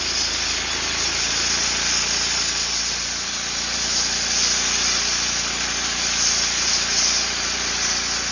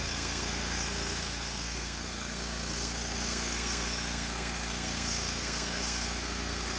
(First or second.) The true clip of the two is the first